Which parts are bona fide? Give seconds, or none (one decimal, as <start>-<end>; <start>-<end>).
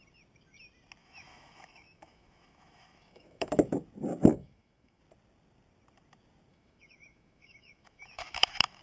0.0-1.0; 3.5-4.3; 5.0-6.5